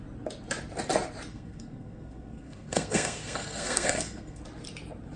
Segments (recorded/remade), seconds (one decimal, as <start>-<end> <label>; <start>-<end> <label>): 0.0-1.3 recorded; 1.3-4.4 remade; 4.4-5.2 recorded